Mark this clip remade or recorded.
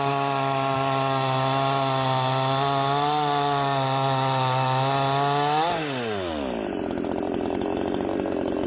recorded